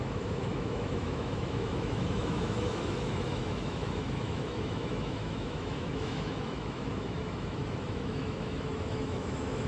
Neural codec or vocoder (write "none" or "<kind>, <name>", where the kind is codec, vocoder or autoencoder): autoencoder, DAC-VAE